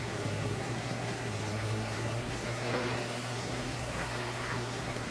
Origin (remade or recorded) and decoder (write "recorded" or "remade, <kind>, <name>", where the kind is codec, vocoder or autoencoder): remade, codec, SNAC